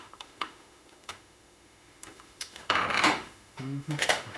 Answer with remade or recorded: remade